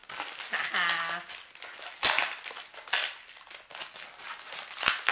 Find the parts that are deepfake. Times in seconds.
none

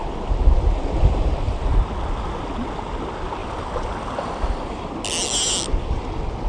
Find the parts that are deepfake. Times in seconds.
3.4-4.8

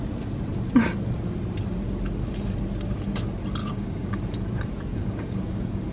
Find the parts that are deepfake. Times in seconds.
3.6-4.2; 4.9-5.9

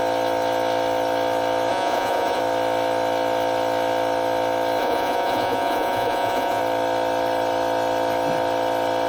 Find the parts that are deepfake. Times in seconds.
1.7-2.4; 4.8-6.6

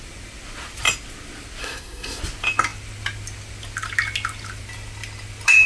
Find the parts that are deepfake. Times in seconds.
1.6-2.2

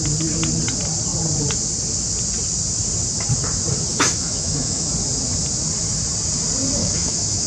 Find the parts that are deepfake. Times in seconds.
3.9-4.9; 6.8-7.5

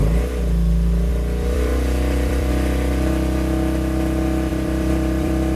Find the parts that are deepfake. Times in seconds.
1.1-2.5; 4.5-5.6

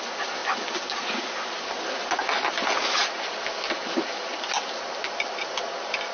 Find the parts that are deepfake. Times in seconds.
none